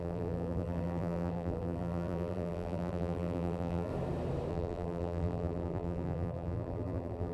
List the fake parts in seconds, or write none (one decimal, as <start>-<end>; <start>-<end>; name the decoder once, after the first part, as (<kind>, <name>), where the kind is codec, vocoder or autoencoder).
0.0-3.9 (vocoder, BigVGAN v2); 4.5-7.3